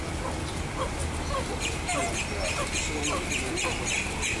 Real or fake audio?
real